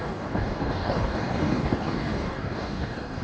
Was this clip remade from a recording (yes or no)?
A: yes